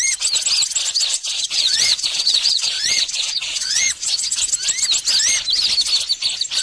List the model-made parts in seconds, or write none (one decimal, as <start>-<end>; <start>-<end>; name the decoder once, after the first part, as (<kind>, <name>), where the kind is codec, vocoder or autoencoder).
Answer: 1.1-4.5 (vocoder, Vocos)